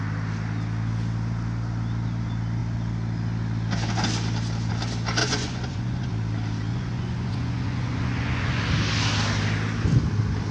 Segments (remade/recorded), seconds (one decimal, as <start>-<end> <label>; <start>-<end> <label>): 0.0-5.2 recorded; 5.2-6.1 remade; 6.1-6.7 recorded; 6.7-8.6 remade; 8.6-10.5 recorded